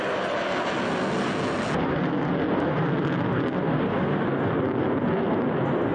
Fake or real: real